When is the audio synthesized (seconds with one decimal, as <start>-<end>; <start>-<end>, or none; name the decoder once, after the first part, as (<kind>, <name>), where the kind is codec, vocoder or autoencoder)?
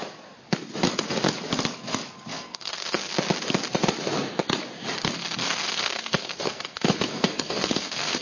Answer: 2.3-3.1 (codec, SNAC); 5.4-8.2